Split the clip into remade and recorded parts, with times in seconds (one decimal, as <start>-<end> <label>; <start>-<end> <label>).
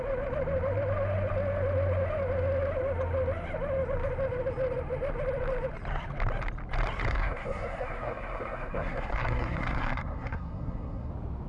0.0-7.1 recorded; 7.1-11.1 remade; 11.1-11.5 recorded